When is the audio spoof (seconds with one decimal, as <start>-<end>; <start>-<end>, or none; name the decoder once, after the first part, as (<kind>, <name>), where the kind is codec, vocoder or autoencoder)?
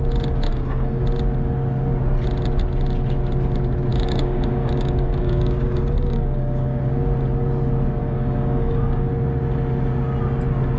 0.5-1.0 (codec, DAC); 3.9-6.8; 8.0-9.1